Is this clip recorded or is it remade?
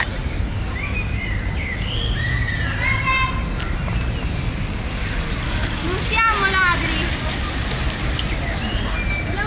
recorded